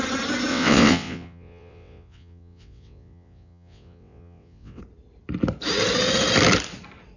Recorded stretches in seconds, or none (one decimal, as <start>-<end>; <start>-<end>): 0.0-0.5; 4.8-7.2